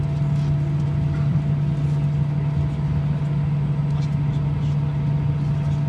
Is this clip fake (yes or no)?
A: no